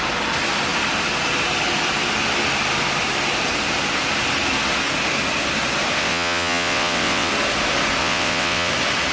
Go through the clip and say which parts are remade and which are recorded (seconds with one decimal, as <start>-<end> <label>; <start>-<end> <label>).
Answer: 0.0-6.0 recorded; 6.0-7.3 remade; 7.3-8.0 recorded; 8.0-8.7 remade; 8.7-9.1 recorded